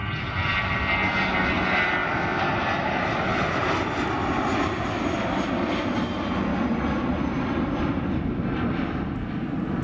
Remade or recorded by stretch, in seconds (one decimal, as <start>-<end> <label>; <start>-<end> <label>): 0.0-9.8 recorded